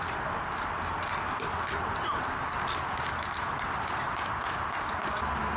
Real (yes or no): yes